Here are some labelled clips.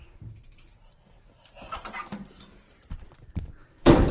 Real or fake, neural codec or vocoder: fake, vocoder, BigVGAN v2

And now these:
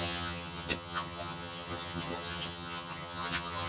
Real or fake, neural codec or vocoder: fake, vocoder, HiFi-GAN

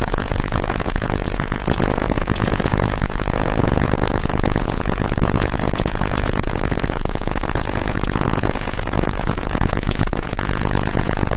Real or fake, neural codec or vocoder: fake, vocoder, Vocos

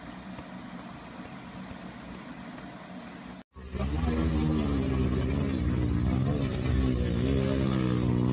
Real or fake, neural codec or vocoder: real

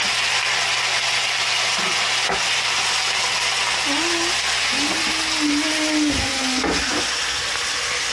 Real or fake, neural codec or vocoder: real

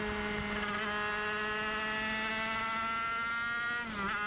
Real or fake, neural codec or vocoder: real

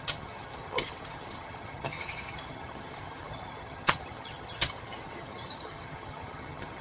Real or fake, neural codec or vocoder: fake, vocoder, HiFi-GAN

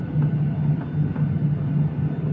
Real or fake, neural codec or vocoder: real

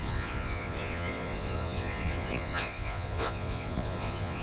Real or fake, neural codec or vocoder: fake, vocoder, Vocos